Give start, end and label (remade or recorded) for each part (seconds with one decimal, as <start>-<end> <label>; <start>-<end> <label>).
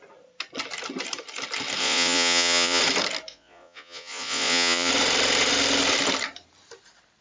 0.0-1.8 recorded; 1.8-2.8 remade; 2.8-3.3 recorded; 3.3-4.9 remade; 4.9-7.2 recorded